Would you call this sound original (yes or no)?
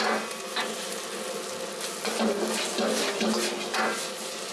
yes